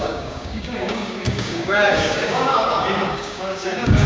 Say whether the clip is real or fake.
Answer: fake